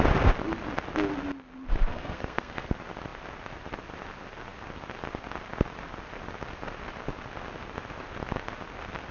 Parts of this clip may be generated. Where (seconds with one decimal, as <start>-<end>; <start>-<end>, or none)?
1.9-2.7